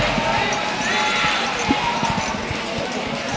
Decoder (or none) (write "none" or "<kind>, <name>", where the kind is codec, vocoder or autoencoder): none